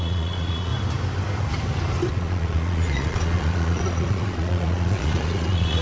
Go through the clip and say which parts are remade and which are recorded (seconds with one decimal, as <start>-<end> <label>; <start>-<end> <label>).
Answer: 0.0-0.7 remade; 0.7-2.1 recorded; 2.1-5.8 remade